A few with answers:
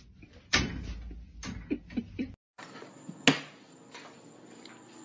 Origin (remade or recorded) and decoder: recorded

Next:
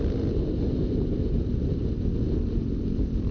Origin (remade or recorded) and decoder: recorded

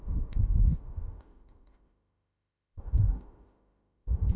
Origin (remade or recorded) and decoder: remade, autoencoder, DAC-VAE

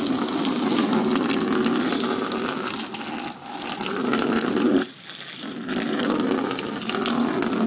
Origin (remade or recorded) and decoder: recorded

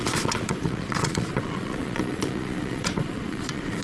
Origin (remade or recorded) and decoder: remade, vocoder, Vocos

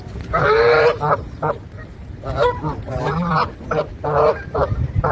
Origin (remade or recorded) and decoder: remade, vocoder, BigVGAN v2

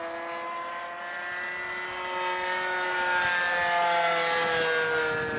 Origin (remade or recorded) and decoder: recorded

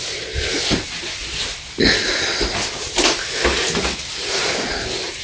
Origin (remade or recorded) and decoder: recorded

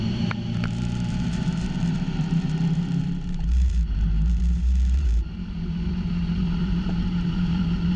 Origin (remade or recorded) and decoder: remade, vocoder, BigVGAN v2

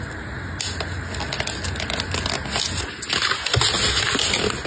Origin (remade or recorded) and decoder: recorded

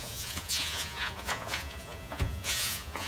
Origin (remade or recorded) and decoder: remade, vocoder, Vocos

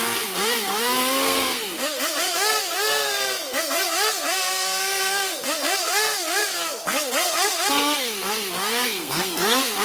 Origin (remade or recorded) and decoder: remade, codec, SNAC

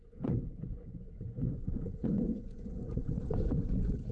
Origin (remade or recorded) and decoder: remade, vocoder, Vocos